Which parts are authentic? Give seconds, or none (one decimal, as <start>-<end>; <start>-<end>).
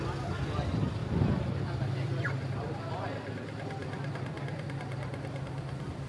0.0-1.0; 2.8-3.8; 4.6-6.1